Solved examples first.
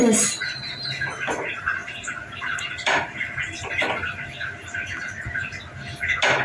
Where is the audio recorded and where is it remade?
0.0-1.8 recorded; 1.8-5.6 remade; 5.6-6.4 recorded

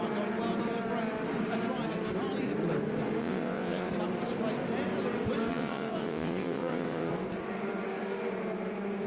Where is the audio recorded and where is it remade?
0.0-3.2 recorded; 3.2-3.9 remade; 3.9-5.5 recorded; 5.5-7.1 remade; 7.1-9.1 recorded